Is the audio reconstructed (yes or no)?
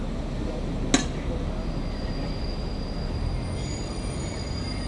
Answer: no